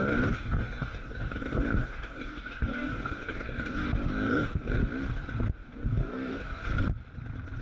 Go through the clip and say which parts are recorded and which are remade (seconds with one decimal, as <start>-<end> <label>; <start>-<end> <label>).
0.0-4.8 remade; 4.8-5.5 recorded; 5.5-6.7 remade; 6.7-7.6 recorded